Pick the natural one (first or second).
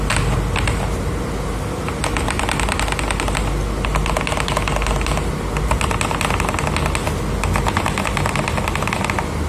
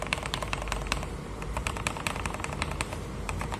first